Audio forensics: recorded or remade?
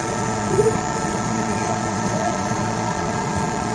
remade